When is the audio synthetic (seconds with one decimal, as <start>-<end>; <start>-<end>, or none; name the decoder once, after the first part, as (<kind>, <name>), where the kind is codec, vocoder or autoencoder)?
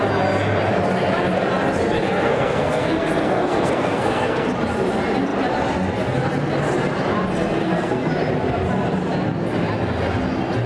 2.0-4.5 (codec, SNAC); 7.6-8.1